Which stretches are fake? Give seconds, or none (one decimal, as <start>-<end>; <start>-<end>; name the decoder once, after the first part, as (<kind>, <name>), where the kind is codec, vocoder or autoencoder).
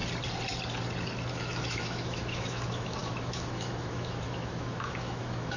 1.3-5.6 (autoencoder, DAC-VAE)